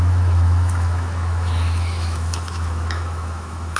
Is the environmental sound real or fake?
fake